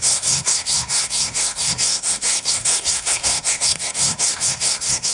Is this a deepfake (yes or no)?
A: yes